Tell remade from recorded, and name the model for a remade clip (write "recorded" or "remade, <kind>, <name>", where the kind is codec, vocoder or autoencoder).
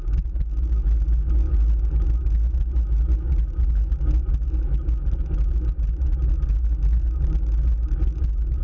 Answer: recorded